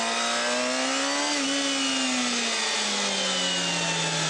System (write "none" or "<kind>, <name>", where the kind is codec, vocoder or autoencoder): none